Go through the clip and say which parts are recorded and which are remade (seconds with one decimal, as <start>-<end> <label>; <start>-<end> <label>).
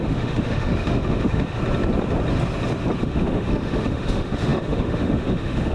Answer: 0.0-1.6 remade; 1.6-3.0 recorded; 3.0-5.7 remade